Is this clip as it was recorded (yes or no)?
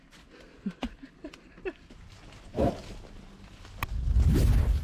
yes